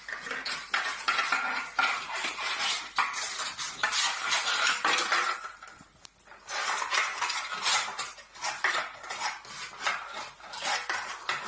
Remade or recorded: recorded